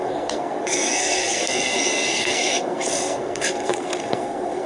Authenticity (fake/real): fake